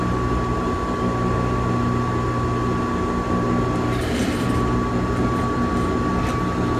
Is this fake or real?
real